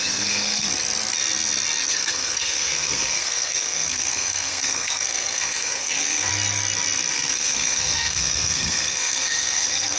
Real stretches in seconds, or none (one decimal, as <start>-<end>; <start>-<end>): 0.7-1.9; 6.3-7.1